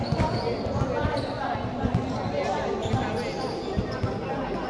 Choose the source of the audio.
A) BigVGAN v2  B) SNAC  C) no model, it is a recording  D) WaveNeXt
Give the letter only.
C